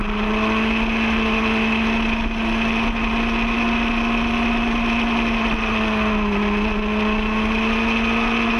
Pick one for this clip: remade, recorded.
recorded